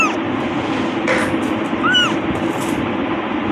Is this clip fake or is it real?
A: real